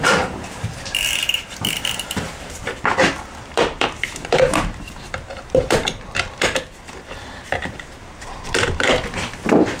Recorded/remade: remade